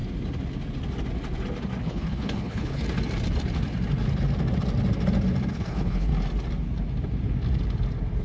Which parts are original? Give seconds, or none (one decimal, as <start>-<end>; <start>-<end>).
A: 0.0-1.8; 2.8-5.5; 6.1-8.2